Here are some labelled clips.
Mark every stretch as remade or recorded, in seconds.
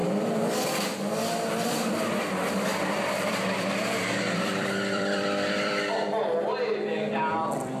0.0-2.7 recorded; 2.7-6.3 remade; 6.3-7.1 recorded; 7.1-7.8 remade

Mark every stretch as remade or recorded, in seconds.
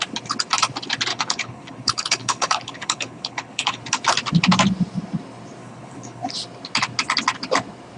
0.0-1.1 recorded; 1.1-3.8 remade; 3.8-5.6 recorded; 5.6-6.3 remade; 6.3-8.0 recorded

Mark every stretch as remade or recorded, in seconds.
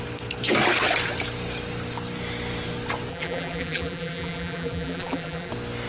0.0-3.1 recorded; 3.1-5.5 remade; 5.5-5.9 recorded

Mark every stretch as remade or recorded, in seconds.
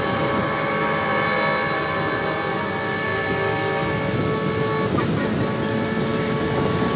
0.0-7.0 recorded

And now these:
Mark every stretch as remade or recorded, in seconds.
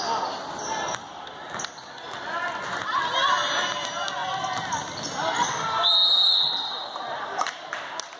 0.0-8.2 recorded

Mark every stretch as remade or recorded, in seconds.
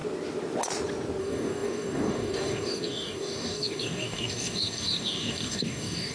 0.0-1.2 recorded; 1.2-6.1 remade